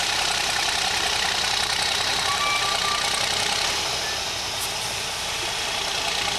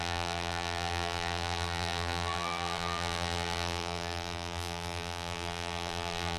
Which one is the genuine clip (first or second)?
first